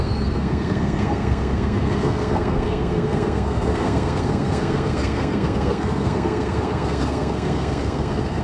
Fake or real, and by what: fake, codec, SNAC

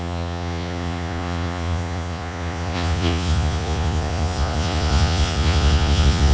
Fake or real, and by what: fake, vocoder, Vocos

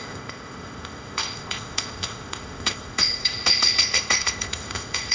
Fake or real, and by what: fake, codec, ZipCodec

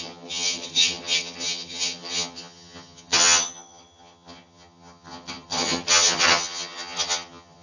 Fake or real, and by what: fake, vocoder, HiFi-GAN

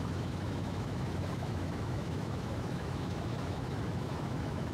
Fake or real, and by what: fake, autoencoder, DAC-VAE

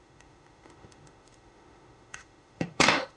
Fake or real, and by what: fake, autoencoder, DAC-VAE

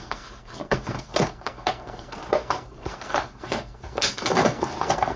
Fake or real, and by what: fake, codec, SNAC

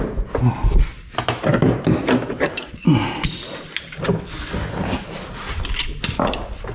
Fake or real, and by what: real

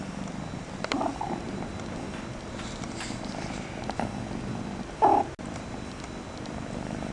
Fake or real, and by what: real